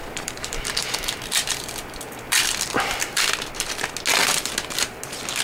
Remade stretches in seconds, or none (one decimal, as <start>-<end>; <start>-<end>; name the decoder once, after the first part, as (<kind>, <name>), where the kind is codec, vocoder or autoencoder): 0.0-3.2 (vocoder, BigVGAN v2)